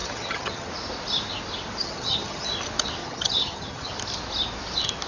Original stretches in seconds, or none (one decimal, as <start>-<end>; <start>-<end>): 0.7-1.8; 2.5-3.0; 3.9-5.1